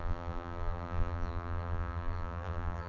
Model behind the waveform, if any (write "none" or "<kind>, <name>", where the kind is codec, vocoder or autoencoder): vocoder, BigVGAN v2